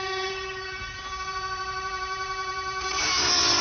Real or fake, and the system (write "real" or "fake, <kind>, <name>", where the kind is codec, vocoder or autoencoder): fake, vocoder, BigVGAN v2